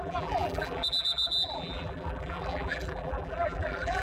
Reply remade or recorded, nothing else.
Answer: remade